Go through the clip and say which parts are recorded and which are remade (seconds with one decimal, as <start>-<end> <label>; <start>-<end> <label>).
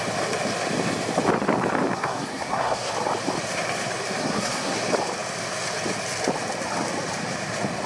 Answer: 0.0-1.9 recorded; 1.9-2.9 remade; 2.9-4.2 recorded; 4.2-4.8 remade; 4.8-7.9 recorded